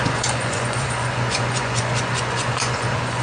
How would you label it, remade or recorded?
remade